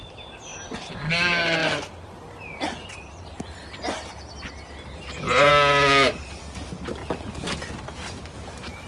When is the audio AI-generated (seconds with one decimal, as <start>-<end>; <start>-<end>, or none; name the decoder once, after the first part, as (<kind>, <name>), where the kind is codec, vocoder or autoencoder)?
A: none